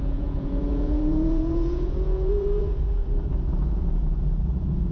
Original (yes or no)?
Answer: no